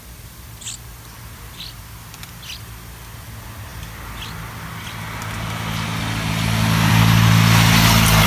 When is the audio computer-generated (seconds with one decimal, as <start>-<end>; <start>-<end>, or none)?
none